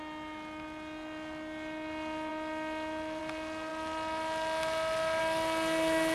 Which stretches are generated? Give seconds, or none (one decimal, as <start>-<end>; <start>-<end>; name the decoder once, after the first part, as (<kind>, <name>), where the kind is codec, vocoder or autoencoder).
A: none